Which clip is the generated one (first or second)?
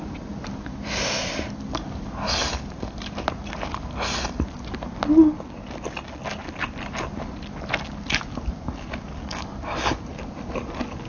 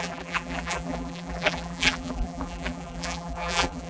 second